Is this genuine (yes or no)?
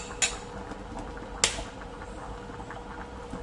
yes